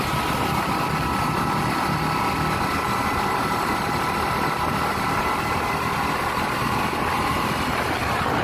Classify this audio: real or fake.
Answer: real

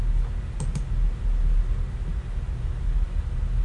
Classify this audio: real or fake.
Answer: real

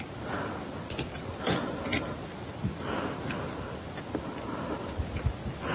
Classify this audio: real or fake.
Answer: real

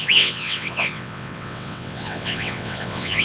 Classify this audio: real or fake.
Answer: fake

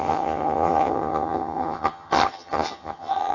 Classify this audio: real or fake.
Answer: fake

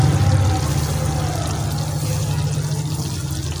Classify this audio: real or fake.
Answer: real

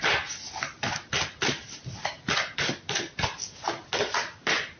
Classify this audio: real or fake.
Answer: real